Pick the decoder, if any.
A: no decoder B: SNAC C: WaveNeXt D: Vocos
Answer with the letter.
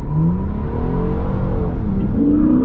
A